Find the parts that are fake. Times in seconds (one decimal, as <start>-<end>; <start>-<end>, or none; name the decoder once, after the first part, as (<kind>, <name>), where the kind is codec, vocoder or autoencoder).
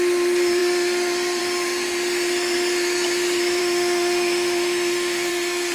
3.6-5.3 (autoencoder, DAC-VAE)